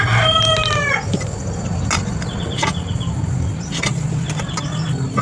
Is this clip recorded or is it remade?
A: recorded